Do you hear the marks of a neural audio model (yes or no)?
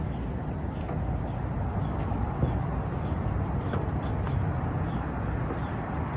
no